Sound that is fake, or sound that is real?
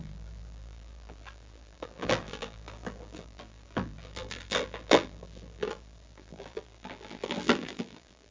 fake